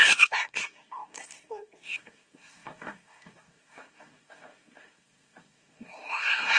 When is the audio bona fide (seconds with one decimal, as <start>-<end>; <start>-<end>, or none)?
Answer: none